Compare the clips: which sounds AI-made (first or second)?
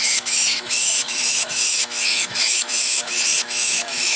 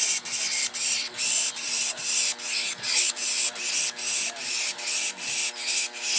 first